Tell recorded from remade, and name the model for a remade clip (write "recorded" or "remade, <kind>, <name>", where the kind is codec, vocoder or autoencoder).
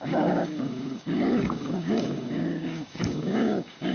remade, codec, DAC